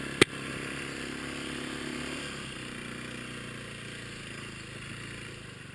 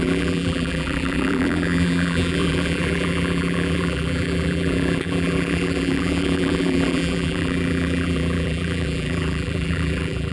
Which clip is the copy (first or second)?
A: second